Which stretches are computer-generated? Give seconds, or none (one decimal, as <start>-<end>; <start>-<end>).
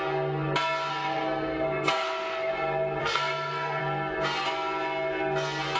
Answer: 0.9-2.5; 3.0-3.8